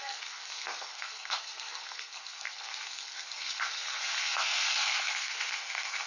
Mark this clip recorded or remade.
remade